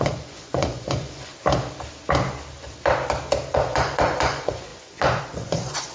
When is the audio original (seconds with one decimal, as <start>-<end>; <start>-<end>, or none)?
1.3-3.5